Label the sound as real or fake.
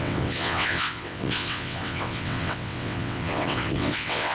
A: fake